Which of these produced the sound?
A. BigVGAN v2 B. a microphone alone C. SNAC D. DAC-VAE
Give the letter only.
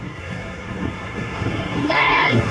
C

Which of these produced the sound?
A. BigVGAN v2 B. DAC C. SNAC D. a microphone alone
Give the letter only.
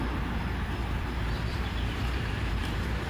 A